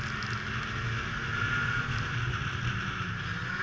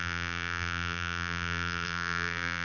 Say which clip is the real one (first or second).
first